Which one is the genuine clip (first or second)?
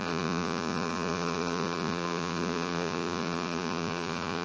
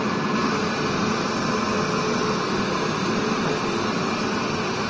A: second